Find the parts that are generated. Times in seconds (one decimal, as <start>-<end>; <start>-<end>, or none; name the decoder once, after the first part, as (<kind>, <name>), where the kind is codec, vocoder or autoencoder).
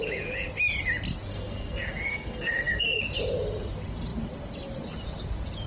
1.3-3.0 (codec, SNAC)